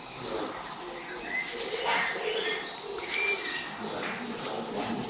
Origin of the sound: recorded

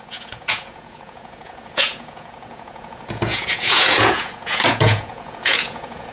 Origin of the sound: remade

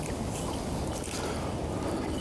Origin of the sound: recorded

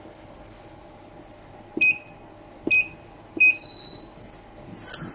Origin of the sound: recorded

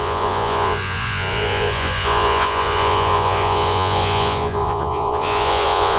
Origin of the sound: remade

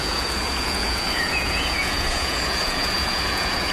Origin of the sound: remade